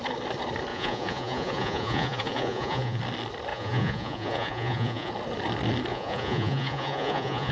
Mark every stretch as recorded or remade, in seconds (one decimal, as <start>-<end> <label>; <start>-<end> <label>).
0.0-0.7 recorded; 0.7-3.0 remade; 3.0-3.5 recorded; 3.5-5.1 remade; 5.1-5.9 recorded; 5.9-7.5 remade

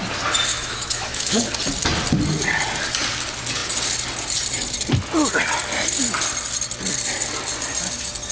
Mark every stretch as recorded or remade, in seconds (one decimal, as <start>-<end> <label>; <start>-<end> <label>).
0.0-0.5 recorded; 0.5-1.4 remade; 1.4-8.3 recorded

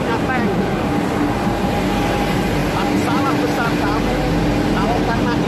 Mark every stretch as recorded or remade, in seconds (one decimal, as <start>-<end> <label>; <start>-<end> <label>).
0.0-5.5 recorded

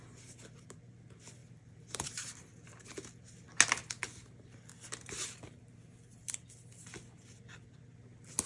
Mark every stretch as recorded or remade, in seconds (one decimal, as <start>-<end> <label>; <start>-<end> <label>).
0.0-1.4 recorded; 1.4-2.9 remade; 2.9-8.5 recorded

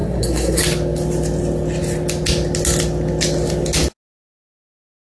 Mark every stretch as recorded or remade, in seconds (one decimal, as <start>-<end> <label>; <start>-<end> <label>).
0.0-0.6 remade; 0.6-5.2 recorded

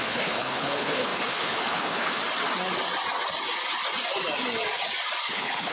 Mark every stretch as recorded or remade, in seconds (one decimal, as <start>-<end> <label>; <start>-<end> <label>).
0.0-2.2 remade; 2.2-5.3 recorded; 5.3-5.7 remade

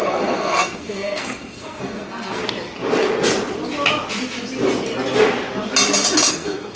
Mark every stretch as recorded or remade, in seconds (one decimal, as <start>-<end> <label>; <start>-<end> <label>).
0.0-2.4 remade; 2.4-6.3 recorded; 6.3-6.8 remade